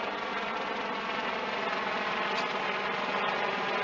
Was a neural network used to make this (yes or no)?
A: no